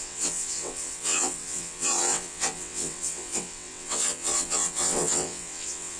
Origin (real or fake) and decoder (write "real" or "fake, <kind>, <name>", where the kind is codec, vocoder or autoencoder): fake, vocoder, WaveNeXt